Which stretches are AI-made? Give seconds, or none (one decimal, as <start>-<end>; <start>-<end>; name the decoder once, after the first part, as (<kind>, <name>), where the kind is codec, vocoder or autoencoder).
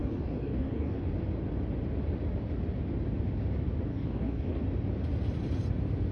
0.0-1.0 (codec, DAC); 3.9-4.6